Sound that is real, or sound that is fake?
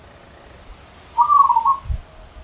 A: real